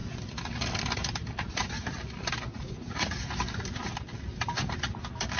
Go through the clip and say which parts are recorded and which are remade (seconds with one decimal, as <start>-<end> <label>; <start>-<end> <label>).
0.0-2.5 recorded; 2.5-3.2 remade; 3.2-5.4 recorded